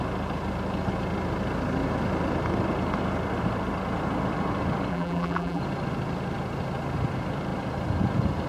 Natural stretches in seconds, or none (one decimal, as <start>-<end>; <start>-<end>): 0.0-4.9; 5.6-8.5